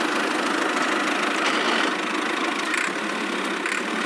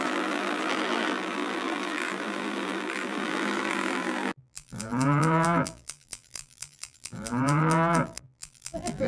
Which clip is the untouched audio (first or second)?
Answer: first